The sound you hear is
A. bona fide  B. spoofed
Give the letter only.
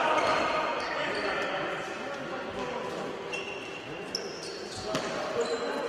A